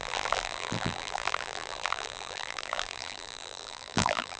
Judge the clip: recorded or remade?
remade